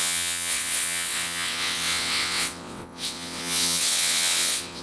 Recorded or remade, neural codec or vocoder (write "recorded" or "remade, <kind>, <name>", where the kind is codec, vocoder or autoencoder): remade, vocoder, WaveNeXt